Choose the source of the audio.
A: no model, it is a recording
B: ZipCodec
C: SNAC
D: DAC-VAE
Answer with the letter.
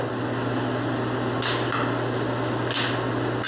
A